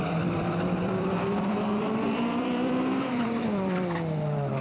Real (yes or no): no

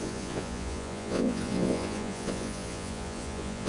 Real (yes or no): no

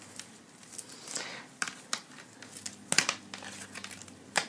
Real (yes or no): yes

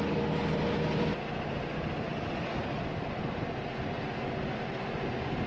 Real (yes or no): yes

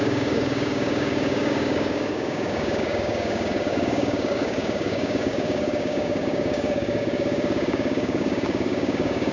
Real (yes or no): no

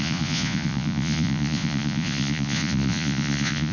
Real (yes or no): no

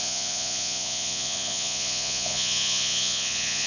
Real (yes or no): no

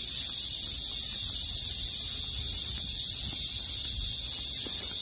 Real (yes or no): yes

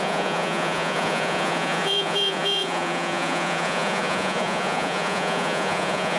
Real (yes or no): no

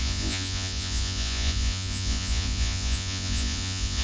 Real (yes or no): no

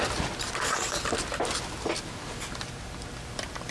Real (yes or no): yes